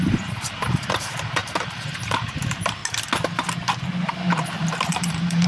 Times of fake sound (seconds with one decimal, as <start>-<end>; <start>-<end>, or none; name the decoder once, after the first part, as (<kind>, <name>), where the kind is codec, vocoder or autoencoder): 0.0-2.8 (vocoder, BigVGAN v2); 4.9-5.5